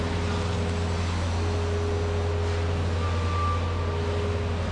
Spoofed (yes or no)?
no